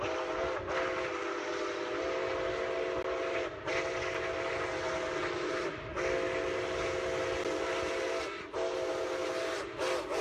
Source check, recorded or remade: recorded